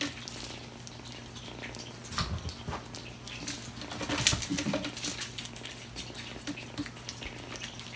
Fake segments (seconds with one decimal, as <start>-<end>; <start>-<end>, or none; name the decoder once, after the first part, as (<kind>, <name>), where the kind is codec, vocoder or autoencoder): none